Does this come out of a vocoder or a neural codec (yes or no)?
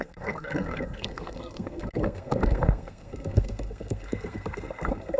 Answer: yes